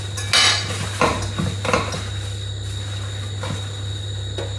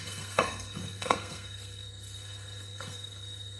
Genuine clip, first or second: first